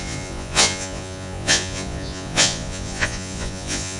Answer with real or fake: fake